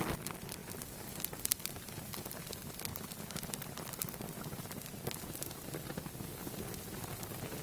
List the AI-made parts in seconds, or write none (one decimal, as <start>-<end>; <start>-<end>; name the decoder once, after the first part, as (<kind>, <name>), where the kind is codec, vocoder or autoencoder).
none